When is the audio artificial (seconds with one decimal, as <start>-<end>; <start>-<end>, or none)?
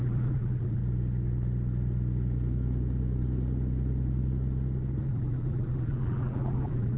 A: 0.0-0.8; 5.0-7.0